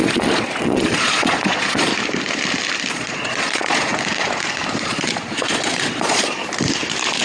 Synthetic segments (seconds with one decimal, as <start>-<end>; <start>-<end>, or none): 0.0-1.9; 2.9-3.9; 4.8-6.4